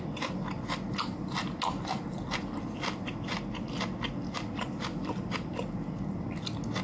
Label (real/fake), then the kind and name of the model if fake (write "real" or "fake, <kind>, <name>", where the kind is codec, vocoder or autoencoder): real